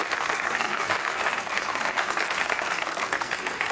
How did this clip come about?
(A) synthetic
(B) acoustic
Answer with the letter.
A